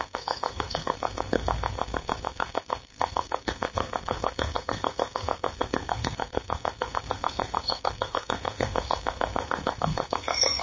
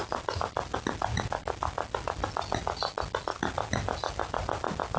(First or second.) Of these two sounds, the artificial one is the first